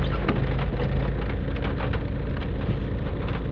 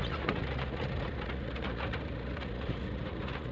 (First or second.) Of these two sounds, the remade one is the second